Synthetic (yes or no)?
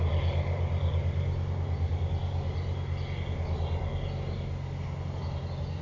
no